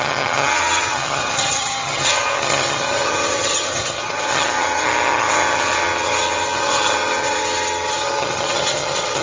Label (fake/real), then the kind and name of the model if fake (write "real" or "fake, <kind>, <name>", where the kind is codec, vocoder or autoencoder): fake, vocoder, HiFi-GAN